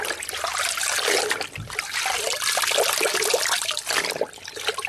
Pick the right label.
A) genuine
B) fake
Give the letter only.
A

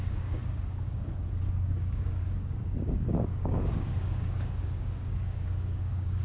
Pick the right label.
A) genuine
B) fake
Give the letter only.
B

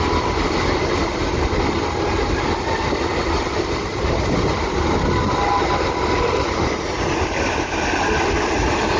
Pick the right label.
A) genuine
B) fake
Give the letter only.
A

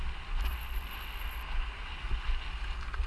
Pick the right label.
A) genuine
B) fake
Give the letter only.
A